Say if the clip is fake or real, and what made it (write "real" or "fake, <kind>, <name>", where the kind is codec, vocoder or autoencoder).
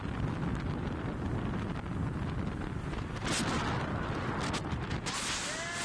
real